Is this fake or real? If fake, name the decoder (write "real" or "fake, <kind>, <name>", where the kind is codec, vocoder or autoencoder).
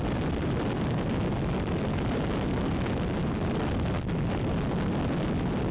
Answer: real